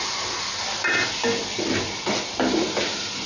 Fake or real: real